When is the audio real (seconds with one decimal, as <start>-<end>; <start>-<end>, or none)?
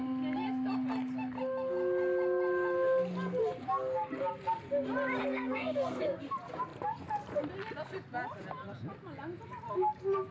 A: 0.0-5.2; 6.2-10.3